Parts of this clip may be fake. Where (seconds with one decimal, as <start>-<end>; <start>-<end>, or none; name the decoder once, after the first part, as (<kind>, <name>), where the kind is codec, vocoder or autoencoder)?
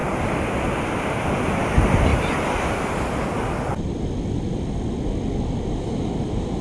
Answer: none